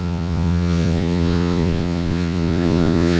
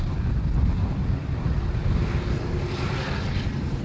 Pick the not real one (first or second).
first